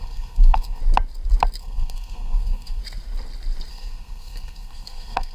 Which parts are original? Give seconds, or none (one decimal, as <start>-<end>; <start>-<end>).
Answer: 0.8-1.6; 2.8-3.7